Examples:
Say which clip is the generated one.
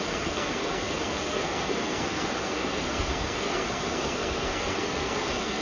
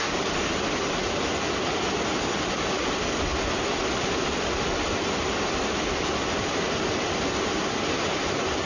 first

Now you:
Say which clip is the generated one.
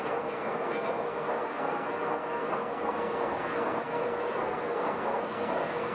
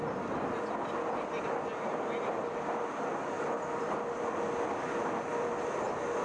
first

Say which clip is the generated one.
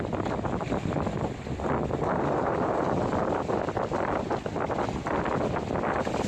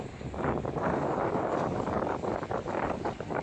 second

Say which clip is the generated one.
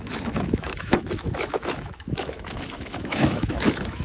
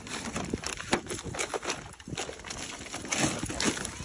first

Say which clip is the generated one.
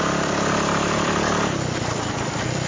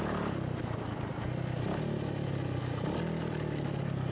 first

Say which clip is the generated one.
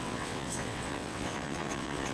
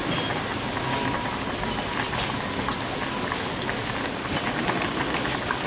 first